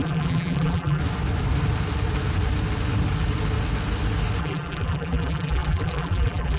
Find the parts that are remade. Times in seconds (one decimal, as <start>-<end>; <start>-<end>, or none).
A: 0.0-1.0; 4.4-6.6